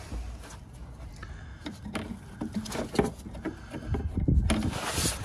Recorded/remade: recorded